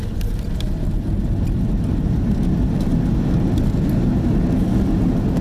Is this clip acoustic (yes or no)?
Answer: yes